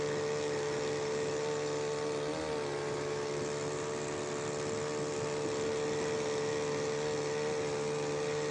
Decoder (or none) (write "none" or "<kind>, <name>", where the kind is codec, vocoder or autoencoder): none